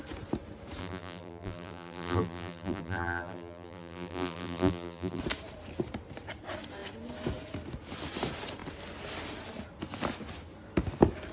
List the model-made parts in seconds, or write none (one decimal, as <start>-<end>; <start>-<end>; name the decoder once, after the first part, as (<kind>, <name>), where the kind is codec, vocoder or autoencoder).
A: 0.8-5.2 (vocoder, BigVGAN v2)